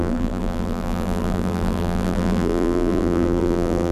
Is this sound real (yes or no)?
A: no